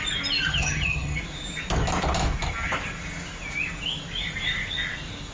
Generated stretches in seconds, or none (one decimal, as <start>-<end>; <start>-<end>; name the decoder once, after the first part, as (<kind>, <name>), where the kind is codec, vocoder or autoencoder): 0.5-1.2 (vocoder, HiFi-GAN)